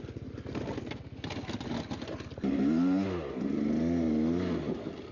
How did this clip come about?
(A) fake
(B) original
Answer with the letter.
B